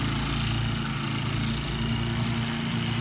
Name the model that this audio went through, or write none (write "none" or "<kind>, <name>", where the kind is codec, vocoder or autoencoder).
none